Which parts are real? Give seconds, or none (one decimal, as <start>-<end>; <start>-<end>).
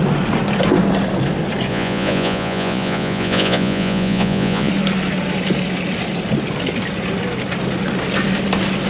0.0-1.7; 4.7-8.9